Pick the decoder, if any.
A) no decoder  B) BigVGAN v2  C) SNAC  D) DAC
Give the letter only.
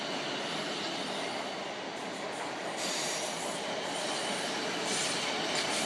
A